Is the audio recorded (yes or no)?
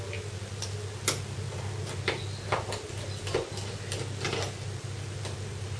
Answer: yes